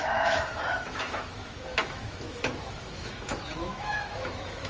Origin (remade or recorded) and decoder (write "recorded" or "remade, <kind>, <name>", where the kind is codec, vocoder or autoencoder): remade, autoencoder, DAC-VAE